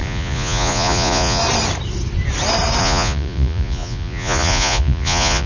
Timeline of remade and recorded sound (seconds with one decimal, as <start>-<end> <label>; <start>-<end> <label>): 0.0-1.4 remade; 1.4-2.8 recorded; 2.8-5.5 remade